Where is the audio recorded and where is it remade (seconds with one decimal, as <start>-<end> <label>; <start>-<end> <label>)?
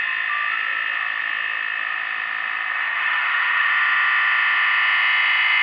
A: 0.0-2.9 recorded; 2.9-3.7 remade; 3.7-5.6 recorded